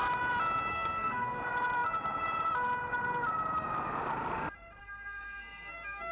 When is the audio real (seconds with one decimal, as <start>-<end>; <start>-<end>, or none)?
0.0-0.7; 1.4-4.8